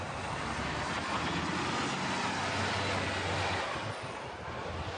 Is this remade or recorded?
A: recorded